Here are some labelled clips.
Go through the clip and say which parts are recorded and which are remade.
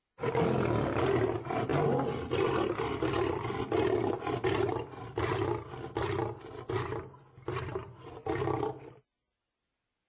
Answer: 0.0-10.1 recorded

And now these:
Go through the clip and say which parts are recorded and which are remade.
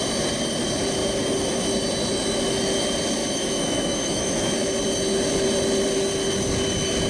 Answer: 0.0-3.2 recorded; 3.2-4.5 remade; 4.5-7.1 recorded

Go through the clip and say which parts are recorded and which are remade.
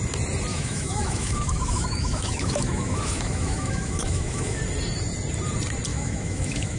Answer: 0.0-0.5 recorded; 0.5-4.6 remade; 4.6-5.9 recorded; 5.9-6.8 remade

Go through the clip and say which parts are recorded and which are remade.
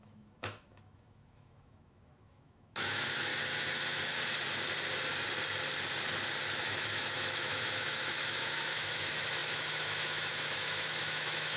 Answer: 0.0-3.3 remade; 3.3-6.6 recorded; 6.6-11.6 remade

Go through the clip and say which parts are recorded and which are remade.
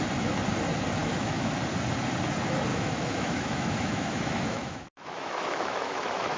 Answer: 0.0-1.0 recorded; 1.0-1.5 remade; 1.5-2.7 recorded; 2.7-6.4 remade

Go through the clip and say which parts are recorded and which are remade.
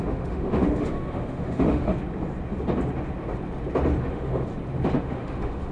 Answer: 0.0-1.9 remade; 1.9-4.1 recorded; 4.1-4.5 remade; 4.5-5.0 recorded; 5.0-5.7 remade